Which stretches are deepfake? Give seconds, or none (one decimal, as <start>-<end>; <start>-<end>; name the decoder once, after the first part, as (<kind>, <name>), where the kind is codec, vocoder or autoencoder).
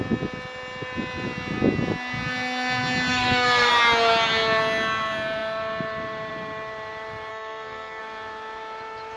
3.1-3.7 (codec, SNAC); 7.3-8.0